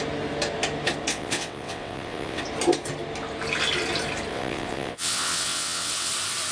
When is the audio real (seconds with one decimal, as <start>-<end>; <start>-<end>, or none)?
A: 0.0-1.1; 2.4-4.3; 6.1-6.5